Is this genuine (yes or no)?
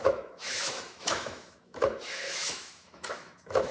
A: no